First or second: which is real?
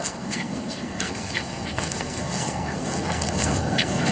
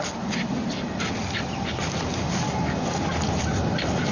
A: second